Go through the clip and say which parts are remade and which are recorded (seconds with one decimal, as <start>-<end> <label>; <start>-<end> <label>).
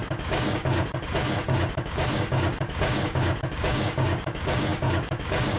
0.0-5.6 remade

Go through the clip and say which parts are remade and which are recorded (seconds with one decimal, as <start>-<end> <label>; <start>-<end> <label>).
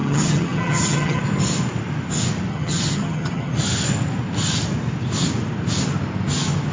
0.0-1.2 remade; 1.2-2.5 recorded; 2.5-3.5 remade; 3.5-6.7 recorded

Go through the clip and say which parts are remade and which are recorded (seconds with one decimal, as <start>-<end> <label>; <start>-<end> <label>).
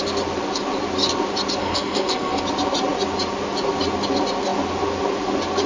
0.0-1.6 recorded; 1.6-2.4 remade; 2.4-5.7 recorded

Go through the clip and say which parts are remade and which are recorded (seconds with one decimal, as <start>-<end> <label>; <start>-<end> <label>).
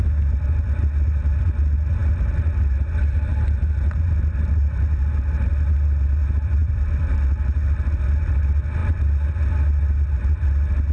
0.0-10.9 recorded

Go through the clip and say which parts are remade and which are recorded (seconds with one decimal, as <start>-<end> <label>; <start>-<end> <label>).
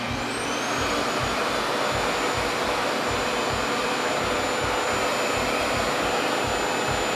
0.0-7.1 recorded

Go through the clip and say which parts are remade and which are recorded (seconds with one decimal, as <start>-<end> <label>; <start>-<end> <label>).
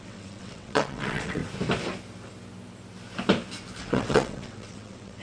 0.0-1.4 remade; 1.4-3.8 recorded; 3.8-5.2 remade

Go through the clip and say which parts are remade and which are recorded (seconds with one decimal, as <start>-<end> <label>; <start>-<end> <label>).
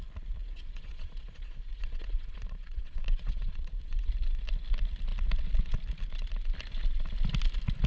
0.0-0.4 recorded; 0.4-4.1 remade; 4.1-7.9 recorded